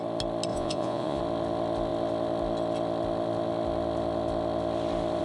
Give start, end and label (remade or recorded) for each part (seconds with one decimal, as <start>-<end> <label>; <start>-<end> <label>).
0.0-0.5 recorded; 0.5-1.2 remade; 1.2-5.2 recorded